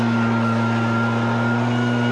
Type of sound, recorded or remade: recorded